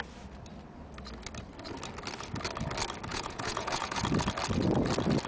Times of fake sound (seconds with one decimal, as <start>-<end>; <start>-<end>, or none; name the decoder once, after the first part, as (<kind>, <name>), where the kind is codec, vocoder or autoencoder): 3.1-4.0 (vocoder, Vocos)